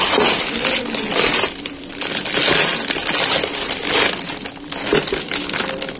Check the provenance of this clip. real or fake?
real